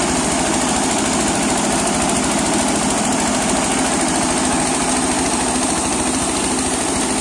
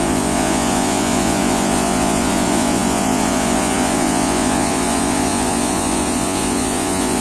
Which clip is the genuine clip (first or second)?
first